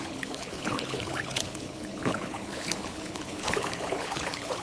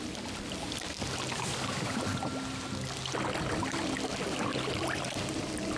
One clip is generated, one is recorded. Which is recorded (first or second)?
second